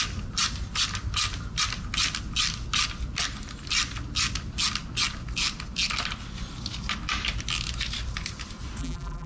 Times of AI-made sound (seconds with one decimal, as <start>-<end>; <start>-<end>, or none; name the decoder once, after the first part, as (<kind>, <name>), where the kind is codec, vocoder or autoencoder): 8.8-9.3 (vocoder, BigVGAN v2)